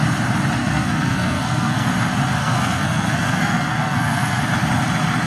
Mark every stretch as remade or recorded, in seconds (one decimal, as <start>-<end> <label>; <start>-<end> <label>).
0.0-0.6 recorded; 0.6-1.9 remade; 1.9-2.4 recorded; 2.4-4.4 remade; 4.4-5.3 recorded

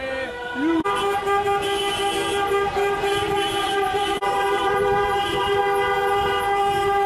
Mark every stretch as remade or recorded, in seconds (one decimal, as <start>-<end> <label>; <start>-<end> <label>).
0.0-3.0 recorded; 3.0-5.6 remade; 5.6-7.1 recorded

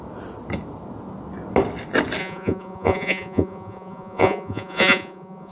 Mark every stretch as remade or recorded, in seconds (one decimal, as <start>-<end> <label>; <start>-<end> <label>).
0.0-2.2 recorded; 2.2-5.5 remade

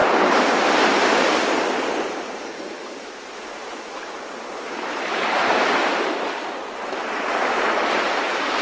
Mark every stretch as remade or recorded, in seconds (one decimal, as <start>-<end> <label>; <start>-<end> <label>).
0.0-8.6 remade

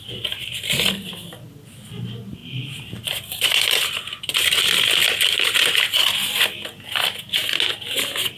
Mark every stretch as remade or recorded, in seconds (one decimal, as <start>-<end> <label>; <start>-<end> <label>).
0.0-8.4 recorded